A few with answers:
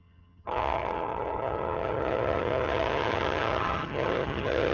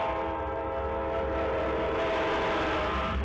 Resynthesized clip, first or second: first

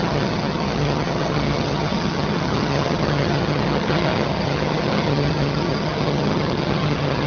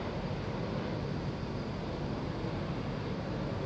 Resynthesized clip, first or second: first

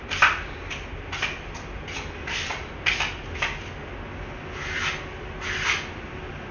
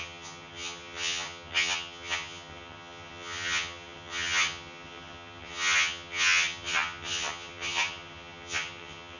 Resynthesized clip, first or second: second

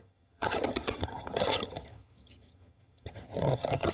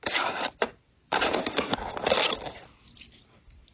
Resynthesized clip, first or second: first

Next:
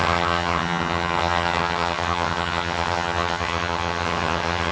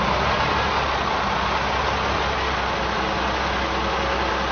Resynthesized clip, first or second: first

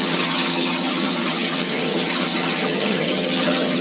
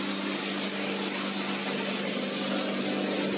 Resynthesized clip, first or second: first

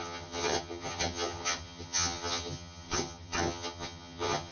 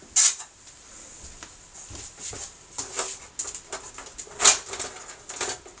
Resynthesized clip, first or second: first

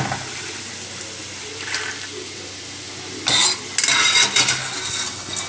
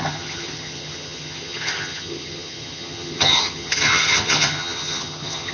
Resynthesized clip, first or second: second